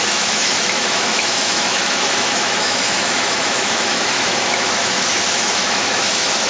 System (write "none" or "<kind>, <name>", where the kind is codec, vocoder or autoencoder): autoencoder, DAC-VAE